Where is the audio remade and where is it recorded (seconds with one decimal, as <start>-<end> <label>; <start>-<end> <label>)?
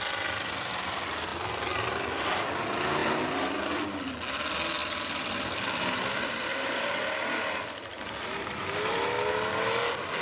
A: 0.0-4.8 recorded; 4.8-9.3 remade; 9.3-10.2 recorded